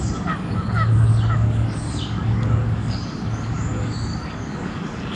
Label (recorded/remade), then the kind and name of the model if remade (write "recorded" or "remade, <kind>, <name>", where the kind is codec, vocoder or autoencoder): remade, codec, DAC